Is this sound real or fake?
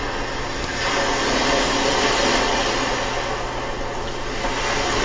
real